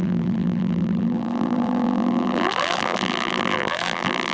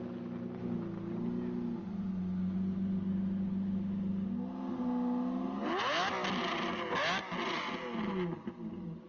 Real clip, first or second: second